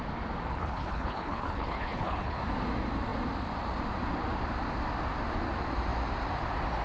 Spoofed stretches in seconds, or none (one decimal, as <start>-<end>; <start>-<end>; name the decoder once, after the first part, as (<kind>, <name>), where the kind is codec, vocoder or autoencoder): 0.5-2.4 (codec, HILCodec)